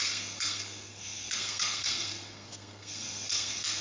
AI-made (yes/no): yes